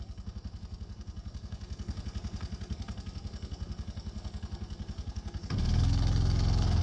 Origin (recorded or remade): remade